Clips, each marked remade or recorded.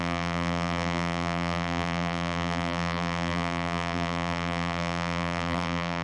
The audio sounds remade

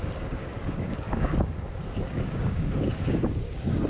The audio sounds remade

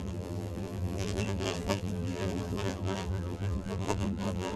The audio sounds remade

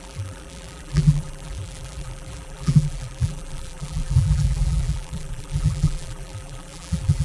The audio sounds remade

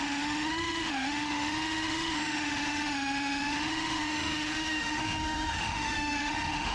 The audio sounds remade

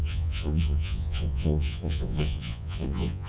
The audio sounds remade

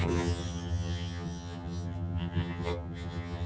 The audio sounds remade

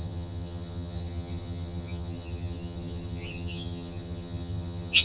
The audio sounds remade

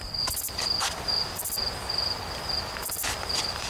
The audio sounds recorded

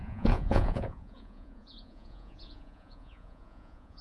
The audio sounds remade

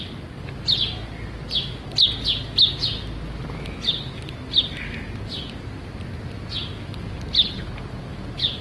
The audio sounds recorded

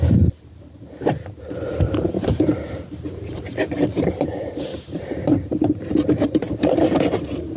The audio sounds remade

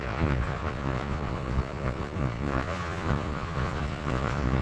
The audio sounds remade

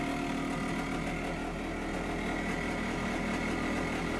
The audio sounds recorded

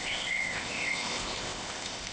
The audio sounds remade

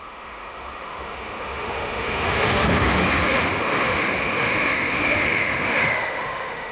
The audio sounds remade